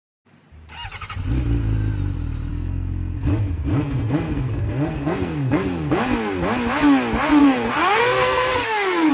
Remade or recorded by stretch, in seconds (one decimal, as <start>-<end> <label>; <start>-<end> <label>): 0.0-2.5 recorded; 2.5-6.0 remade; 6.0-7.4 recorded; 7.4-9.1 remade